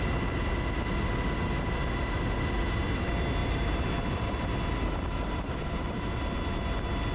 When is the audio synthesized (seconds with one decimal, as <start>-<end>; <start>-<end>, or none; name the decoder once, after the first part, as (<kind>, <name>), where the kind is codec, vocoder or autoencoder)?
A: 3.4-3.9 (vocoder, BigVGAN v2); 4.8-6.2